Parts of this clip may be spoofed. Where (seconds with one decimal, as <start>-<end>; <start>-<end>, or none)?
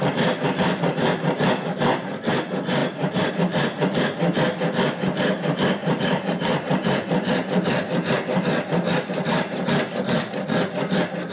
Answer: 2.8-3.3; 5.8-7.8